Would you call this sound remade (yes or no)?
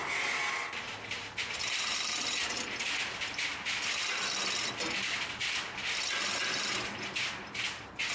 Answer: no